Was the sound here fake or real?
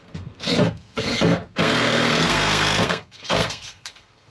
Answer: fake